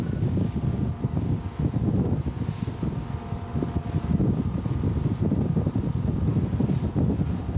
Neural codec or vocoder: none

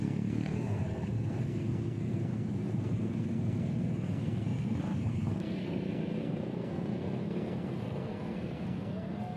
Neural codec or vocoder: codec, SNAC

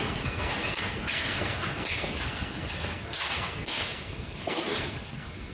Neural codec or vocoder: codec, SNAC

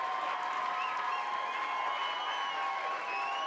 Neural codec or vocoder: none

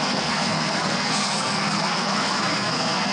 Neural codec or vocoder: codec, SNAC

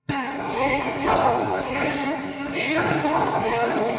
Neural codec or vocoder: codec, SNAC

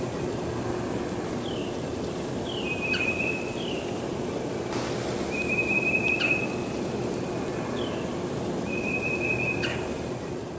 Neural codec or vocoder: none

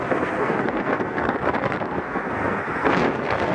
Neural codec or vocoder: codec, SNAC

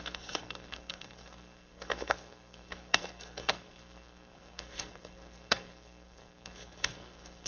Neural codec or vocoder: codec, SNAC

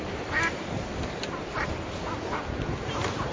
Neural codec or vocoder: none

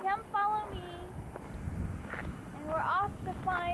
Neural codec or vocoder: none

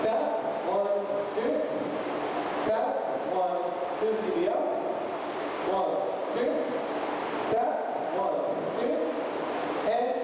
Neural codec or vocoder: none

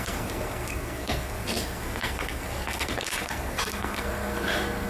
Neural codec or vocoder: codec, SNAC